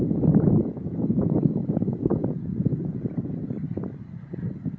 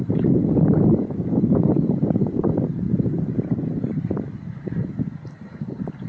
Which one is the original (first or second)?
first